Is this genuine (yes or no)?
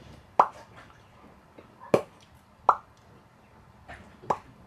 yes